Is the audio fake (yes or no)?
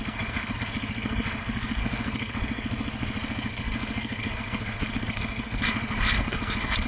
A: yes